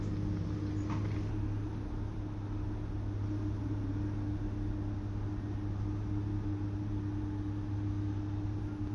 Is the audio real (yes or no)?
yes